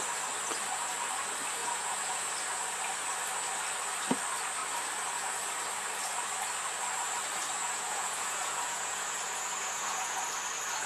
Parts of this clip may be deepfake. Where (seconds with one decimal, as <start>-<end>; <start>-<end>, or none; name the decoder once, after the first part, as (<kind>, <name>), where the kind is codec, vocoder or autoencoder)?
1.6-2.3 (vocoder, Vocos); 7.6-10.2